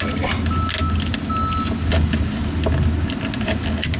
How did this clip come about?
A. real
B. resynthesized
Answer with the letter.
A